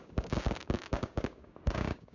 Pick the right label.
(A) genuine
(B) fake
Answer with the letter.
B